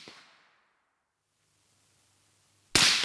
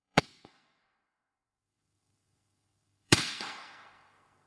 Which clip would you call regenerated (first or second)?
second